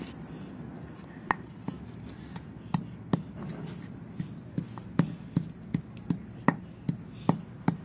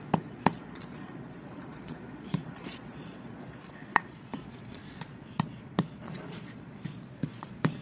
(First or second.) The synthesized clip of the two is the second